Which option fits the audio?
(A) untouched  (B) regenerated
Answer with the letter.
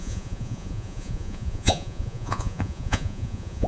B